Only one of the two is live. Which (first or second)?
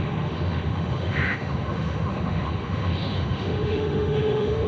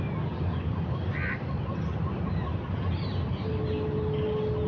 second